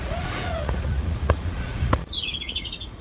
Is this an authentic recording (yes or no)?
no